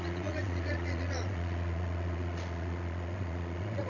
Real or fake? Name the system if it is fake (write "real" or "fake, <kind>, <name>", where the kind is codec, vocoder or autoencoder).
fake, vocoder, Vocos